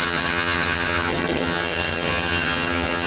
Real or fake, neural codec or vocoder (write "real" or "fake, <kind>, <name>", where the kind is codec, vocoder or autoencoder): fake, vocoder, HiFi-GAN